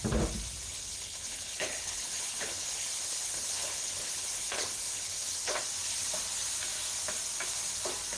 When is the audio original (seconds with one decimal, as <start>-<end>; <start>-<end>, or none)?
0.0-0.7; 5.6-8.2